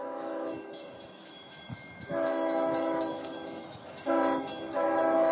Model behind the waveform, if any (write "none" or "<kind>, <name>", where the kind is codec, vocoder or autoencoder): autoencoder, DAC-VAE